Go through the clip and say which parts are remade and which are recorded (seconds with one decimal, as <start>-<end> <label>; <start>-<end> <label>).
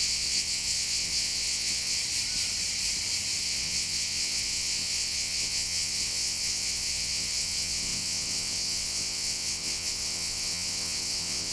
0.0-2.0 remade; 2.0-3.4 recorded; 3.4-11.5 remade